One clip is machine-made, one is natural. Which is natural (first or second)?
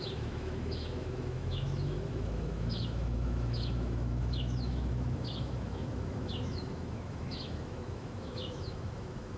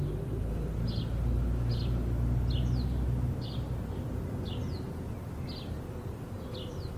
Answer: second